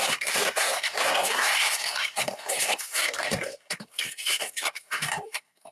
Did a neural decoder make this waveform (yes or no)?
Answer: yes